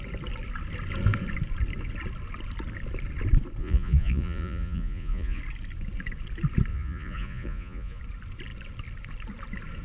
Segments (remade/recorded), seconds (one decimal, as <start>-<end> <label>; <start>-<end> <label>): 0.0-3.6 recorded; 3.6-5.4 remade; 5.4-6.7 recorded; 6.7-8.0 remade; 8.0-9.8 recorded